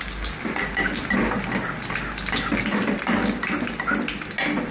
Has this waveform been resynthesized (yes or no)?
no